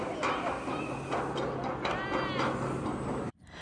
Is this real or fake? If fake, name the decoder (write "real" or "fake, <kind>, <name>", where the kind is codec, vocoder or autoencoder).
real